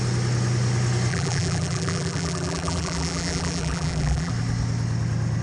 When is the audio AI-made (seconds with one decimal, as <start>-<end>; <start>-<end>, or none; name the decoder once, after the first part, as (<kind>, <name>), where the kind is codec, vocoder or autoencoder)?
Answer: 1.1-4.3 (vocoder, BigVGAN v2)